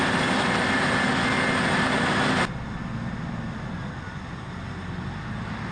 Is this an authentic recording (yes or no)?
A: yes